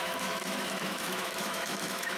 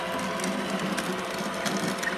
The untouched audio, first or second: second